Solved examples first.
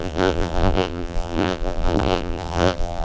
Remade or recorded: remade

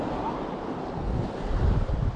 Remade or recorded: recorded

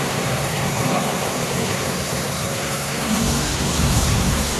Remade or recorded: remade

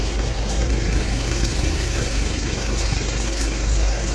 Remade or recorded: remade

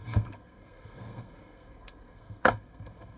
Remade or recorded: remade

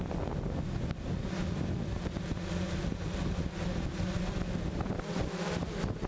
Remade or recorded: recorded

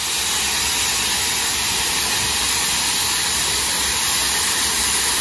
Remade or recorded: recorded